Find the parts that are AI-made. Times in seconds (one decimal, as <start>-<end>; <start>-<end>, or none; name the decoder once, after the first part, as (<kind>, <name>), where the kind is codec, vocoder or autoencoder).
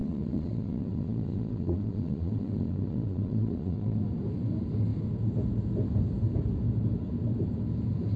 0.0-4.0 (vocoder, Vocos)